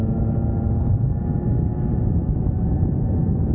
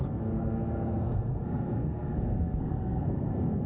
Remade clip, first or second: second